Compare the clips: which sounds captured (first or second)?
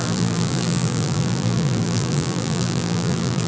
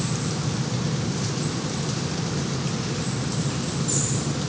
second